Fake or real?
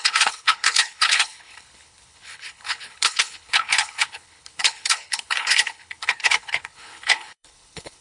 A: fake